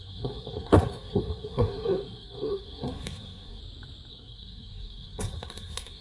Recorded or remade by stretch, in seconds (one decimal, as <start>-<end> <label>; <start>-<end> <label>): 0.0-3.6 remade; 3.6-4.1 recorded; 4.1-6.0 remade